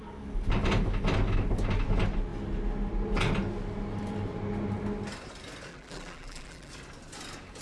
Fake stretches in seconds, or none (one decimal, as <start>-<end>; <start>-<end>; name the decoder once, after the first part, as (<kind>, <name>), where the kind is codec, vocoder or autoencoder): 5.7-6.7 (vocoder, BigVGAN v2)

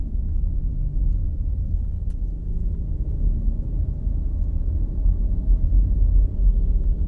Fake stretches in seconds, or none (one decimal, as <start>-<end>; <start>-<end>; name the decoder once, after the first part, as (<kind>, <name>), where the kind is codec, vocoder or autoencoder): none

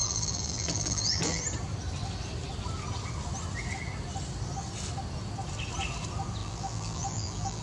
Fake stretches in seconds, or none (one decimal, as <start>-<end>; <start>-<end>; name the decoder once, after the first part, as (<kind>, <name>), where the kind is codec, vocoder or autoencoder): 0.0-1.4 (vocoder, BigVGAN v2); 6.4-7.6